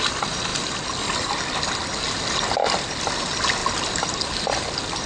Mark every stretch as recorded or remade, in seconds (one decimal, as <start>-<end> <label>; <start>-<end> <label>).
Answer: 0.0-5.1 recorded